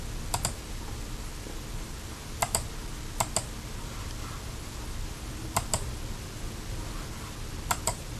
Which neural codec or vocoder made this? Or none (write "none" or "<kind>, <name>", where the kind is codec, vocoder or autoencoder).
none